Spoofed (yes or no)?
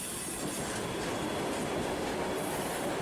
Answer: no